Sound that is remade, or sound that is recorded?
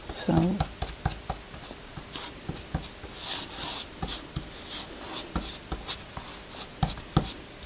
recorded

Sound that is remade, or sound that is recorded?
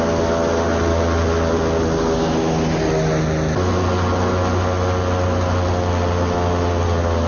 recorded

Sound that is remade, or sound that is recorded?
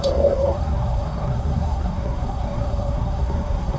remade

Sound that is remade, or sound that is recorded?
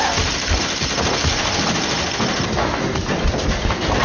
recorded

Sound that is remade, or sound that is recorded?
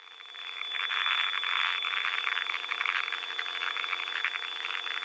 remade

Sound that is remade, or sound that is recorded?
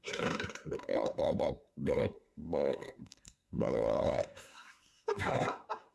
remade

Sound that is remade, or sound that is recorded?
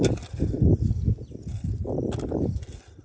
recorded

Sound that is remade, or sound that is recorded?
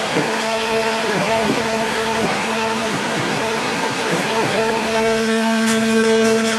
remade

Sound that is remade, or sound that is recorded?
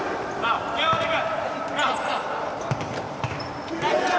remade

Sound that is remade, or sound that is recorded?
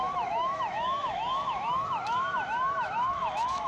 remade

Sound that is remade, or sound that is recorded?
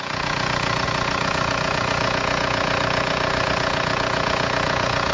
remade